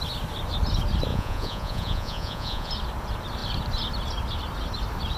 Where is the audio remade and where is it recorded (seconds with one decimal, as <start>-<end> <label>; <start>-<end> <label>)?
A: 0.0-1.1 recorded; 1.1-2.7 remade; 2.7-5.2 recorded